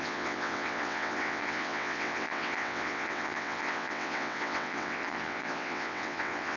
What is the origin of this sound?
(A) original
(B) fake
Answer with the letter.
B